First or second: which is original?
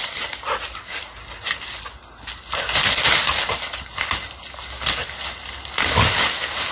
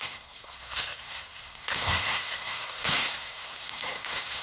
first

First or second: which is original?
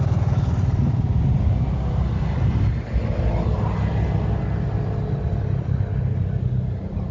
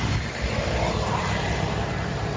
first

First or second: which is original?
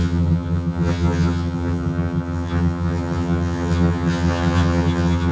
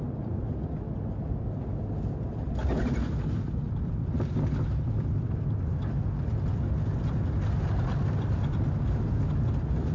second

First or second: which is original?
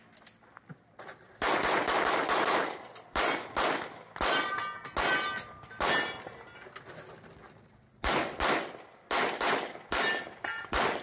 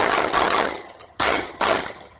first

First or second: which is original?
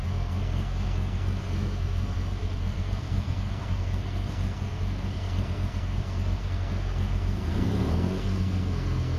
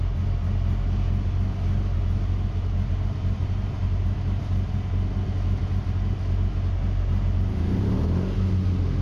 second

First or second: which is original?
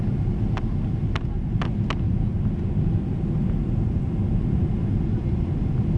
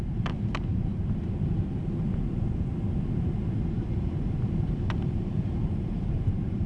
first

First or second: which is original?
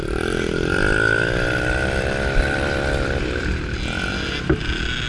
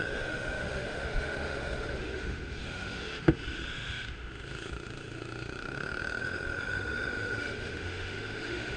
first